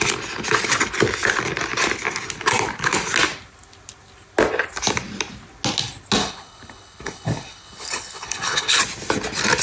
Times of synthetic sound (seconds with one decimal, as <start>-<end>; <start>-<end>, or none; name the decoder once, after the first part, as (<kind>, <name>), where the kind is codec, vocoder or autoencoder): 6.2-8.8 (codec, HILCodec)

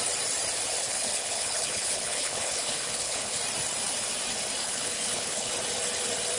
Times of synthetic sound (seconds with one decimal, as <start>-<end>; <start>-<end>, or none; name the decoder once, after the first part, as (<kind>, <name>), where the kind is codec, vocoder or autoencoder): 0.8-3.4 (codec, HILCodec); 4.6-5.5

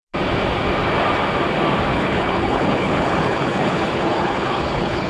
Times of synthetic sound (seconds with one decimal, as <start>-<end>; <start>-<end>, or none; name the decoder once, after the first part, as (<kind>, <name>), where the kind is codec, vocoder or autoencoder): 1.9-5.1 (codec, HILCodec)

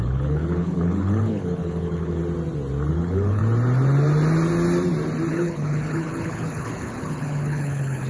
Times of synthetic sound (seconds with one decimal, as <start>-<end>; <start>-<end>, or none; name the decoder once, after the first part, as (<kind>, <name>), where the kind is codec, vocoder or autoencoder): 0.0-2.2 (codec, HILCodec); 2.9-3.4; 5.3-8.1

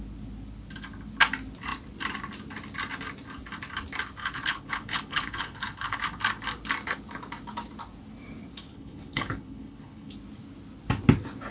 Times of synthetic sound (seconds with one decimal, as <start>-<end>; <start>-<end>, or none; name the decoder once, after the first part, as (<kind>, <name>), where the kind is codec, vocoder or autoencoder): 4.2-6.0 (codec, HILCodec); 8.7-10.1